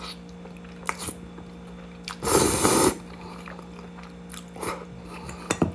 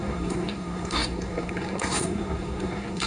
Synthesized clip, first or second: second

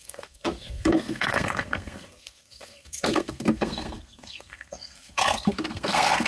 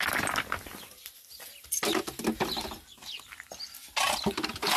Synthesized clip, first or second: first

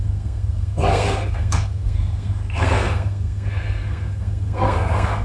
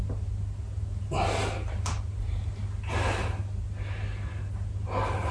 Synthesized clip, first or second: first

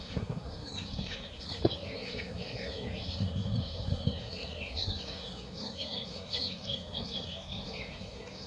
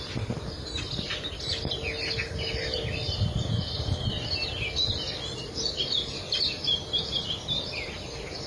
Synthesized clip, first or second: first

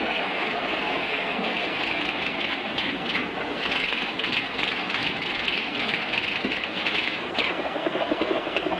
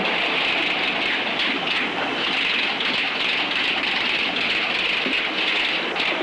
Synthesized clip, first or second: first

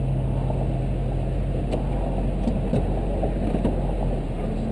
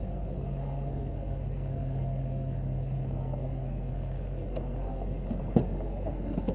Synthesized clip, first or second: second